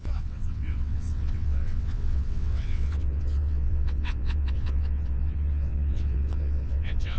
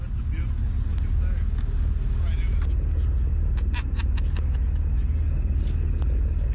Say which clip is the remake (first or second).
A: first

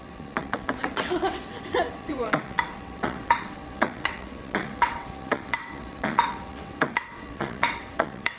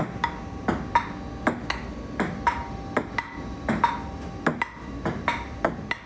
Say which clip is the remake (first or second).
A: first